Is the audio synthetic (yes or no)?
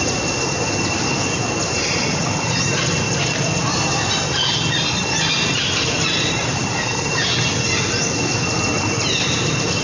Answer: no